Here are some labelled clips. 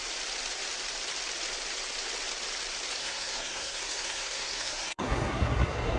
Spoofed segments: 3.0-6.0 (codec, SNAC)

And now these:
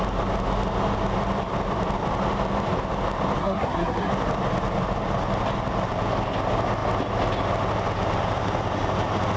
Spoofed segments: 3.4-4.1 (codec, SNAC)

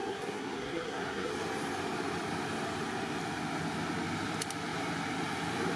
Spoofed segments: 0.0-1.3 (codec, SNAC)

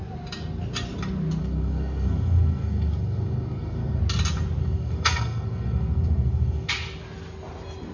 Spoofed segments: 1.4-4.0 (codec, SNAC); 4.6-6.7

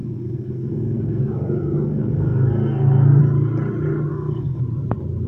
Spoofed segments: 0.0-3.2 (codec, SNAC); 4.1-4.6

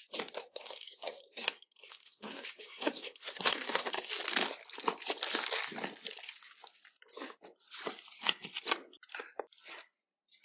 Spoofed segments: 0.4-4.1 (codec, SNAC)

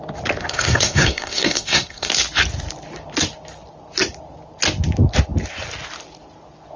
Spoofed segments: 0.4-2.1 (codec, SNAC)